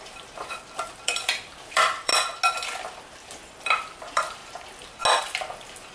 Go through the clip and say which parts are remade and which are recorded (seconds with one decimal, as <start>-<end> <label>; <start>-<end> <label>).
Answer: 0.0-2.1 remade; 2.1-3.6 recorded; 3.6-4.4 remade; 4.4-5.2 recorded; 5.2-5.9 remade

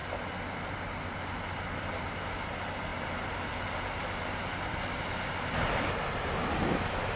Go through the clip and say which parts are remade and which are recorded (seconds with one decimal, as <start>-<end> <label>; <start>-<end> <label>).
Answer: 0.0-7.2 recorded

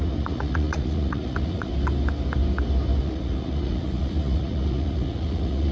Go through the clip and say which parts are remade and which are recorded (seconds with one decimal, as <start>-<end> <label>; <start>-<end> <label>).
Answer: 0.0-1.7 remade; 1.7-3.0 recorded; 3.0-5.7 remade